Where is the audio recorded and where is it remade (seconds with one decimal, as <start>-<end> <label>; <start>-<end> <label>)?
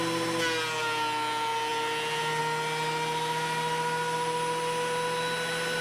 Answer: 0.0-5.8 recorded